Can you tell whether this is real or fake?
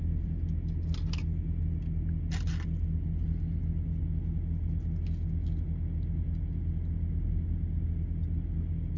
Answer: real